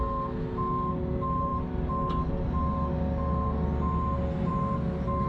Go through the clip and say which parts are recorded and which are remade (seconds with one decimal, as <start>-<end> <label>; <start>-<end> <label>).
0.0-5.3 recorded